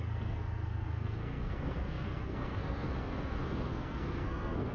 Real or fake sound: fake